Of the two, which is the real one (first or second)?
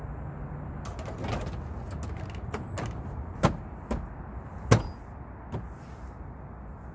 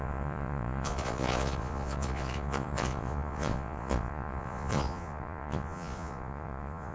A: first